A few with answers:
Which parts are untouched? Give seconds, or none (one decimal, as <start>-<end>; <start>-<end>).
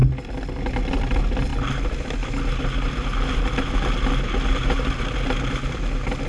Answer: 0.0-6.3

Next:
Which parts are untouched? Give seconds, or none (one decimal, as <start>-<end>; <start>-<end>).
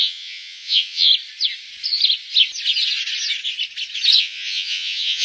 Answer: 1.1-4.2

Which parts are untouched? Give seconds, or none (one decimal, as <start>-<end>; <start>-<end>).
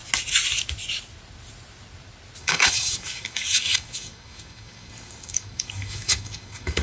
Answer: 0.0-2.4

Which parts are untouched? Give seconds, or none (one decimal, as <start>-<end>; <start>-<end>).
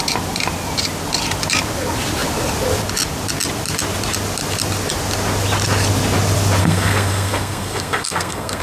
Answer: 0.0-6.6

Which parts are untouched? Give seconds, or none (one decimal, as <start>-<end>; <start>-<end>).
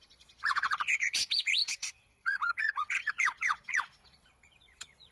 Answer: none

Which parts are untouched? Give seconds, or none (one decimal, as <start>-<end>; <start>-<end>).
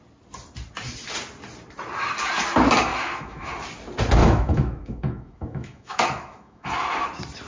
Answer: 0.0-2.9; 3.5-4.2; 6.7-7.5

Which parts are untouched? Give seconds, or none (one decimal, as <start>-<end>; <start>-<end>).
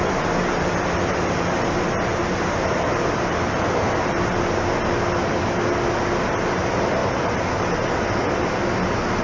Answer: 0.0-9.2